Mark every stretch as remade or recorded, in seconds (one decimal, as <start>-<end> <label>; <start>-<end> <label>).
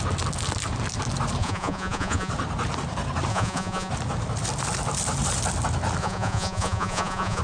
0.0-1.4 recorded; 1.4-2.3 remade; 2.3-3.3 recorded; 3.3-3.9 remade; 3.9-6.0 recorded; 6.0-7.4 remade